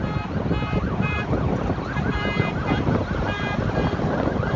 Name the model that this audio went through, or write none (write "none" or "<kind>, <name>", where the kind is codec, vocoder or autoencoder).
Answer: none